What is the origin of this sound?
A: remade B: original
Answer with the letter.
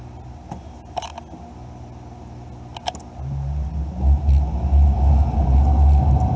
B